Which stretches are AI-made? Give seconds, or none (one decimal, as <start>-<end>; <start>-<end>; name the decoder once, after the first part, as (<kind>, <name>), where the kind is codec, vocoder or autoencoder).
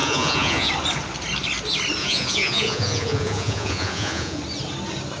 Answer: 0.0-0.7 (vocoder, Vocos); 2.0-4.4